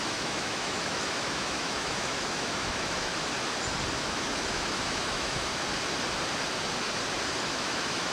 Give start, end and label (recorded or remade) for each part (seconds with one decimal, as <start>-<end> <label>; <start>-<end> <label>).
0.0-3.1 remade; 3.1-3.9 recorded; 3.9-5.5 remade; 5.5-7.5 recorded; 7.5-8.1 remade